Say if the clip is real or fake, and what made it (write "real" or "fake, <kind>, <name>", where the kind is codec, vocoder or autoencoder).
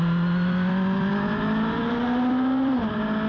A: real